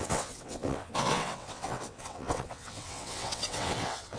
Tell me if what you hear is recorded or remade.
remade